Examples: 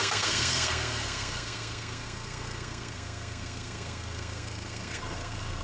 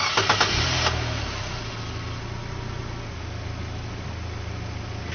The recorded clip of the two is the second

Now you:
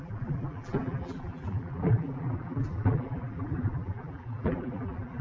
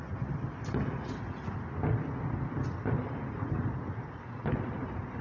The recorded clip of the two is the second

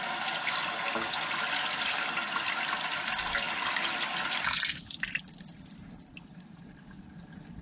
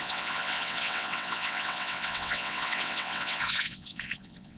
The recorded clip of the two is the first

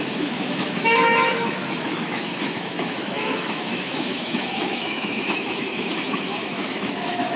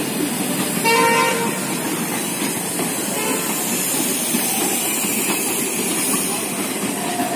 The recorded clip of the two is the second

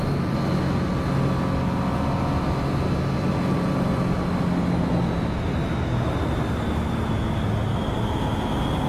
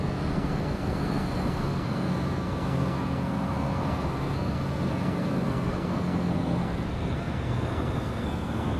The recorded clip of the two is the first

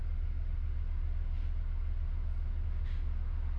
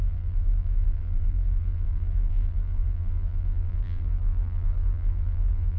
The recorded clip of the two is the first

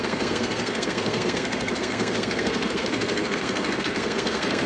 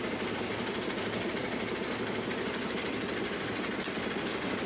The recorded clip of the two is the second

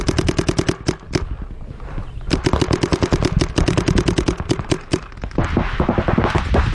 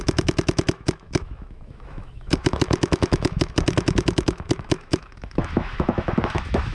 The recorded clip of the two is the first